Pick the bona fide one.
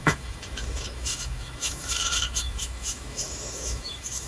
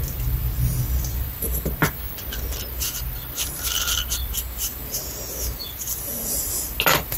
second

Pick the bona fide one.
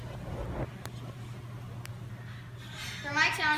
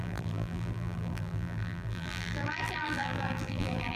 first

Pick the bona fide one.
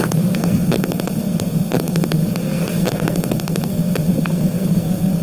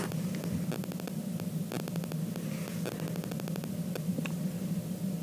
second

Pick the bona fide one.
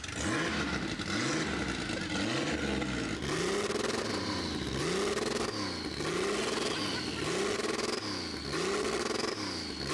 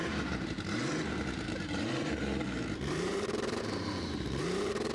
first